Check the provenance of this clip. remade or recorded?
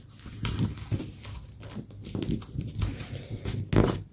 recorded